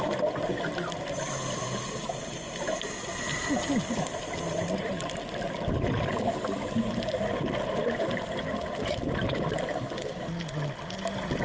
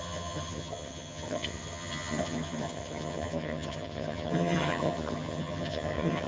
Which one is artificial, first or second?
second